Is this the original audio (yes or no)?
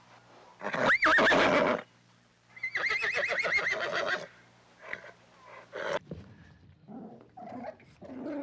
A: yes